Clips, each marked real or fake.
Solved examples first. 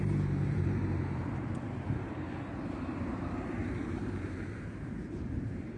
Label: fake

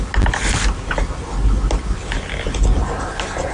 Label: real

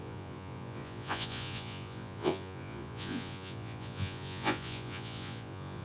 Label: fake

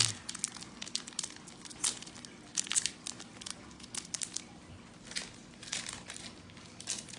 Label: real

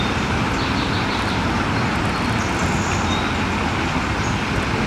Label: real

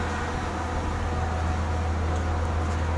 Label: real